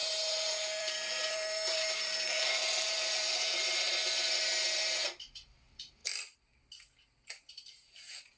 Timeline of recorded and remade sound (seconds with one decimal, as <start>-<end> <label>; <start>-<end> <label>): 0.0-6.0 remade; 6.0-7.4 recorded; 7.4-8.4 remade